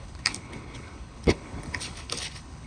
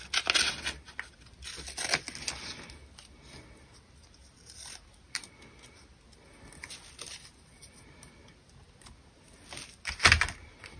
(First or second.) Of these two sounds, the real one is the second